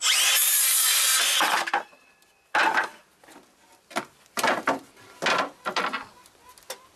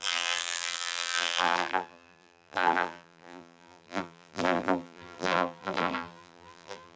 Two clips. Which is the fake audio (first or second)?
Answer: second